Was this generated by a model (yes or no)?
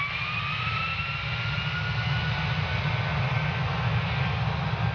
no